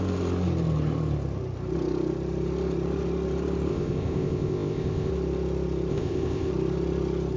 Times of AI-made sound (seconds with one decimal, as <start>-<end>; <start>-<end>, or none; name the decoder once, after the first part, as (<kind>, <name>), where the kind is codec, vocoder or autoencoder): 3.7-5.1 (codec, ZipCodec); 5.9-6.5